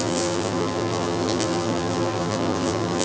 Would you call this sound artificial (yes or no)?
yes